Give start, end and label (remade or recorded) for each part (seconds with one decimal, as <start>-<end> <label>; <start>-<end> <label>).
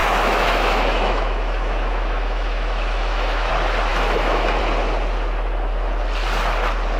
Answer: 0.0-3.5 remade; 3.5-3.9 recorded; 3.9-4.6 remade; 4.6-7.0 recorded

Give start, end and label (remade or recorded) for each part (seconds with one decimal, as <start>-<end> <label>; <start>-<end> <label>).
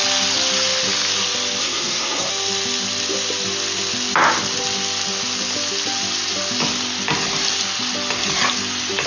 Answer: 0.0-1.6 recorded; 1.6-2.3 remade; 2.3-9.1 recorded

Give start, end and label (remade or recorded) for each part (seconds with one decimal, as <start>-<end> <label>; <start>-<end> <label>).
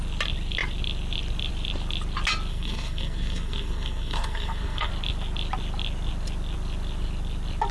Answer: 0.0-2.5 recorded; 2.5-4.9 remade; 4.9-7.7 recorded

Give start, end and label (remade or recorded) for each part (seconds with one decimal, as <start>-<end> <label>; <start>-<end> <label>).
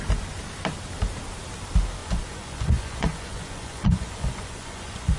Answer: 0.0-2.0 recorded; 2.0-5.2 remade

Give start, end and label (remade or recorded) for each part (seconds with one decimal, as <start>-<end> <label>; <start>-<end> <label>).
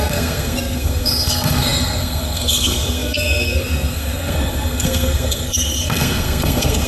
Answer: 0.0-6.9 remade